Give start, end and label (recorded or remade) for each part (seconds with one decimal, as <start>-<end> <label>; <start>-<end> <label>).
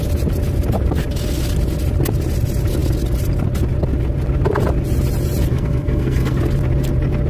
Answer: 0.0-5.5 recorded; 5.5-6.4 remade; 6.4-7.3 recorded